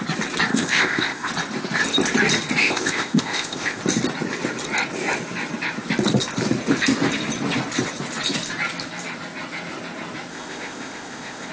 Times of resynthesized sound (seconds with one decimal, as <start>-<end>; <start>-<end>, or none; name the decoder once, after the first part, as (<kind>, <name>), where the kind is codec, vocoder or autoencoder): 0.5-1.3 (codec, ZipCodec); 2.6-3.8; 10.3-11.5